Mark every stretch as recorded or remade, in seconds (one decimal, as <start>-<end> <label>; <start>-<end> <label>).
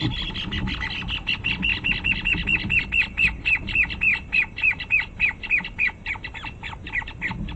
0.0-4.1 recorded; 4.1-6.1 remade; 6.1-7.6 recorded